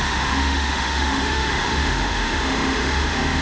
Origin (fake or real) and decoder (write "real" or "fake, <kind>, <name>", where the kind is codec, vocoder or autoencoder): fake, autoencoder, DAC-VAE